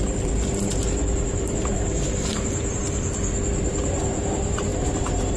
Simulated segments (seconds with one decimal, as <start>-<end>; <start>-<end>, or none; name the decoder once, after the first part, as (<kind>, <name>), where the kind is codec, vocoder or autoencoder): 0.0-5.4 (vocoder, BigVGAN v2)